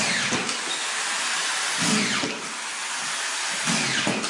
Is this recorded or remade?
recorded